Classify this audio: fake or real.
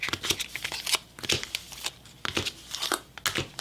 real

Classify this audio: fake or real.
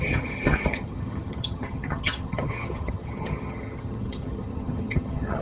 fake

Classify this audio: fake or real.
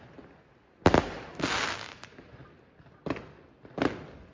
real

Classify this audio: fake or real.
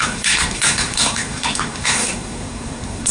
fake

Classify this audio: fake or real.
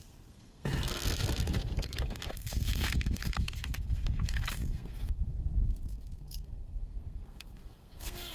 fake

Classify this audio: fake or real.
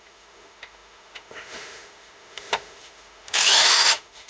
fake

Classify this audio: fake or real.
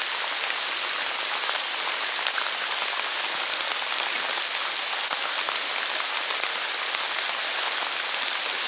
real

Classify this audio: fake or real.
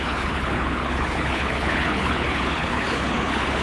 fake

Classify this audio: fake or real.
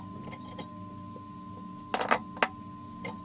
real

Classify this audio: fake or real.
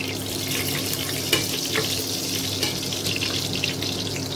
real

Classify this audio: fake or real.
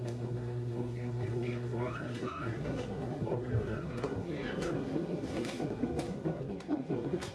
fake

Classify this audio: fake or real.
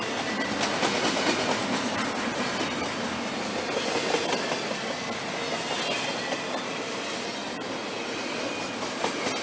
real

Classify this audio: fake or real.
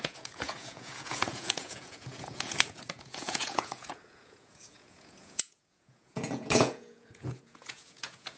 fake